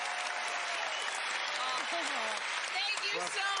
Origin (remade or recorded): recorded